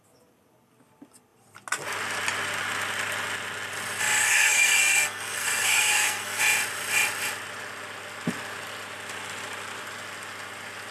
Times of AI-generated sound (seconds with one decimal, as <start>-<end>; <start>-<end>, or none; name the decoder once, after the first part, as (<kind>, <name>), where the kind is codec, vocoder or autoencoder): 4.2-6.4 (codec, SNAC)